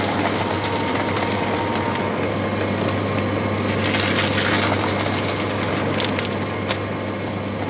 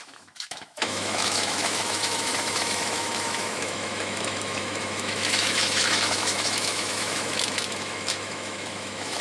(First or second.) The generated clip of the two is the second